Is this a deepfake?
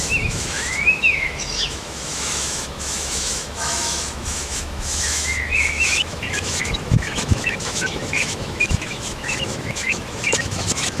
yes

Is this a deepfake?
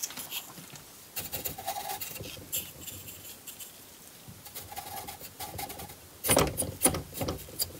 no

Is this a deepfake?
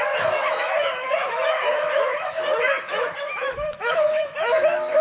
yes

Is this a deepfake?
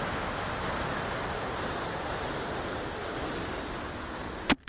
no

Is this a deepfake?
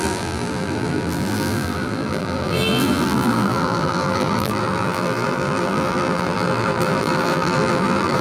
yes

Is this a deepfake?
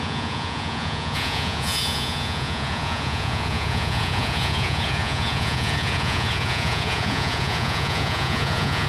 yes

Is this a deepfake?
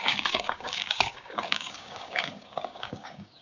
yes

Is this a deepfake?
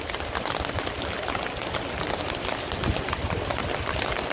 no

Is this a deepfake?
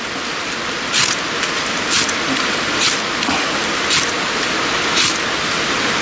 no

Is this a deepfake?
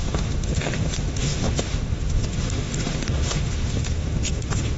yes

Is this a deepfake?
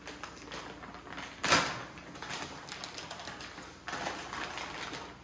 no